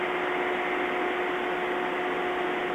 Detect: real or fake real